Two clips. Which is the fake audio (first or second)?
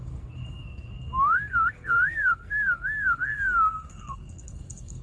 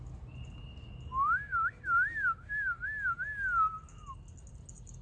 first